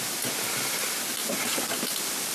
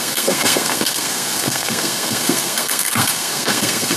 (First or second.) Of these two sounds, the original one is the first